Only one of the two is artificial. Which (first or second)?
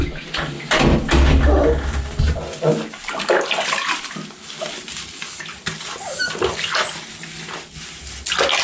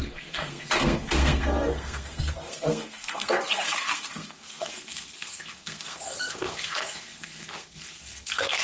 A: second